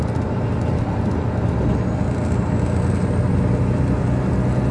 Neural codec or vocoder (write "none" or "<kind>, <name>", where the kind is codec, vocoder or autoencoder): none